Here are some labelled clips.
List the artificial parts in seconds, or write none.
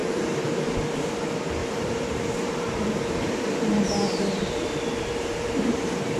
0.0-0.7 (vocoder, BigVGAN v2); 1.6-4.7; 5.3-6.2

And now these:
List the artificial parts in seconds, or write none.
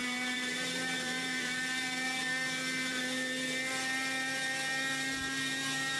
0.0-3.0 (vocoder, BigVGAN v2)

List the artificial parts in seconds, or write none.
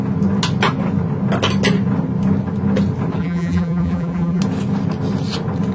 3.2-4.4 (vocoder, BigVGAN v2)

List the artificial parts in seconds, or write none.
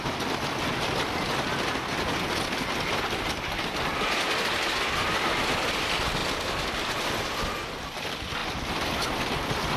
6.2-7.0 (vocoder, BigVGAN v2)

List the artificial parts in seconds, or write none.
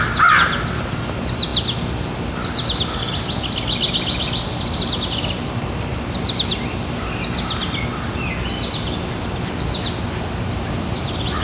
none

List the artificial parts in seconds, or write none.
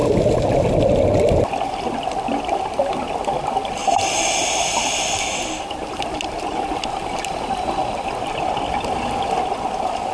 none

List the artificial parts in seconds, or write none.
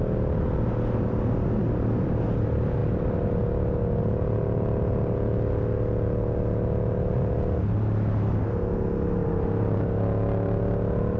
9.2-9.8 (vocoder, BigVGAN v2)